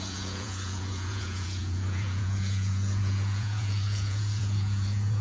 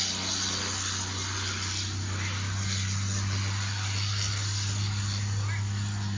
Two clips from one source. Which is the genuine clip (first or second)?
second